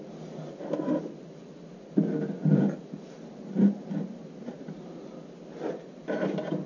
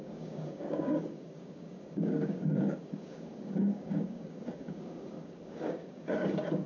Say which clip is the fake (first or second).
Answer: second